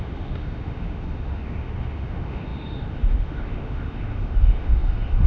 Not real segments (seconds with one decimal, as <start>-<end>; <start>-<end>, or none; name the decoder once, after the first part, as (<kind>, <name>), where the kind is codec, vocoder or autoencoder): 0.0-5.3 (autoencoder, DAC-VAE)

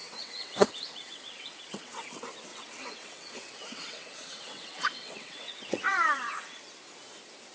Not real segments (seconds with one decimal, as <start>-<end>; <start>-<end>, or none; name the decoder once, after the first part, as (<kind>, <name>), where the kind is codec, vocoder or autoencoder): 0.0-2.1 (vocoder, WaveNeXt); 2.5-6.6

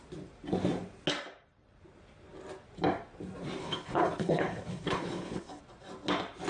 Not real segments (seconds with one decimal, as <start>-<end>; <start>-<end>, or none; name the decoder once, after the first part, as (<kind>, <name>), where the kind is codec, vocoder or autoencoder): 3.6-5.6 (codec, HILCodec)

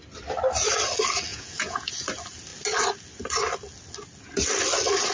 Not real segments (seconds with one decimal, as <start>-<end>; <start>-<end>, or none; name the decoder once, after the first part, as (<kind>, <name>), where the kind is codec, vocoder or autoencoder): 1.3-1.9 (vocoder, Vocos)

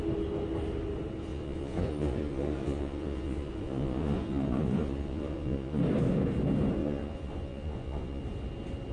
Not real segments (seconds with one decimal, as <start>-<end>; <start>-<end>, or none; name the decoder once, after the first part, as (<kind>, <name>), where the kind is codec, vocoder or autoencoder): 1.3-5.8 (vocoder, Vocos); 6.8-8.2

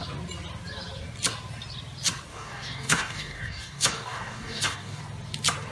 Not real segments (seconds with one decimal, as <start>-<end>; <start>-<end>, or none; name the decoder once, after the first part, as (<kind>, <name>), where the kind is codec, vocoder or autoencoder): 2.3-5.0 (codec, DAC)